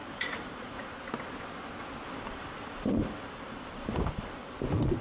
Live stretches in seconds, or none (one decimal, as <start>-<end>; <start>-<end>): 0.9-2.0; 4.4-5.0